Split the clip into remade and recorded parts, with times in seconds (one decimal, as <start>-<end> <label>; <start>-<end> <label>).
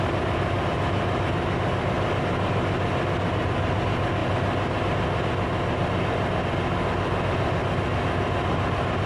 0.0-4.2 remade; 4.2-9.1 recorded